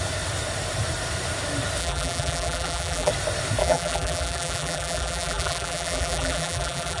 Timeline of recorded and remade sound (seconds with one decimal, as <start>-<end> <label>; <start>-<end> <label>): 0.0-1.8 recorded; 1.8-3.1 remade; 3.1-3.6 recorded; 3.6-7.0 remade